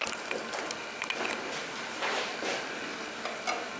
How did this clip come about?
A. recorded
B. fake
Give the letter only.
A